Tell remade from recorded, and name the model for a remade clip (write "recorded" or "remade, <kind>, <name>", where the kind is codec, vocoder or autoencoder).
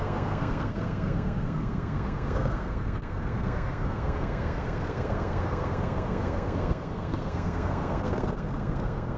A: remade, codec, SNAC